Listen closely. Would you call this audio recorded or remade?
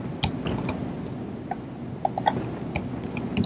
recorded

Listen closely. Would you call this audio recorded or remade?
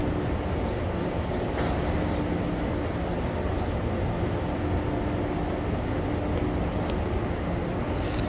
recorded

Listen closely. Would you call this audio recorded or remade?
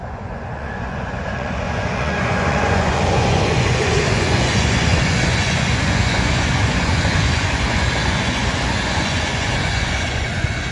remade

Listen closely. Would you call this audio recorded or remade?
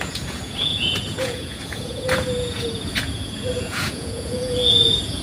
remade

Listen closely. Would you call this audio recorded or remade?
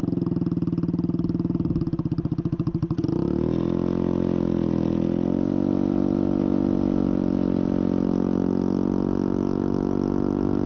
recorded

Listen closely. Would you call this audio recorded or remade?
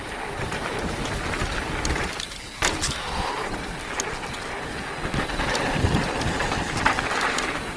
recorded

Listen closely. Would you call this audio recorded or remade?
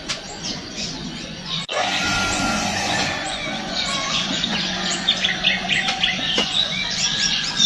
remade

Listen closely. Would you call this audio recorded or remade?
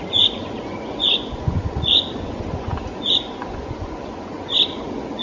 remade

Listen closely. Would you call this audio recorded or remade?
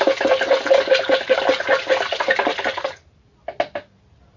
recorded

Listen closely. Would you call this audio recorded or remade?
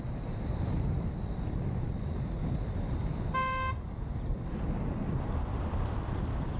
recorded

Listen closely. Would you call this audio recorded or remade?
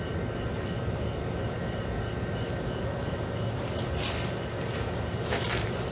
recorded